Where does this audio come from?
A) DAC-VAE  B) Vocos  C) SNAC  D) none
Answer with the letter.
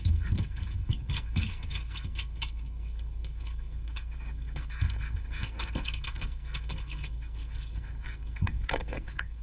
C